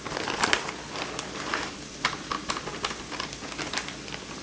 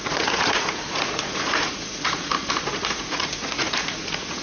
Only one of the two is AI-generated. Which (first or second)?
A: second